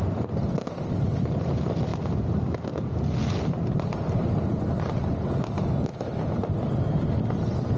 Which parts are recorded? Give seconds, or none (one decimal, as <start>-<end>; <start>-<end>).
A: 0.0-7.8